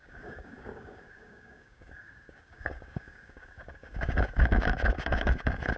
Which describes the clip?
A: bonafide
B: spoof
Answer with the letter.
B